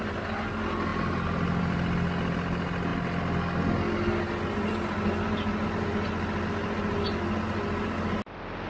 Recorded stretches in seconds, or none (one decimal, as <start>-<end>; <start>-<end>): 0.0-8.7